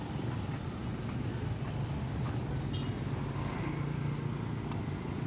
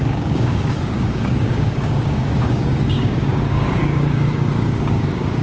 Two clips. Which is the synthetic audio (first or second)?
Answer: second